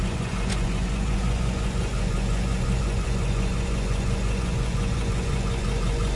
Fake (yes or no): yes